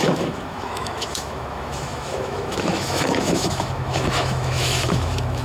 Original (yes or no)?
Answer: no